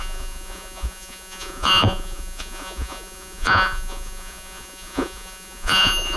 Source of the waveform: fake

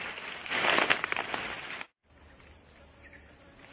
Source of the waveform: real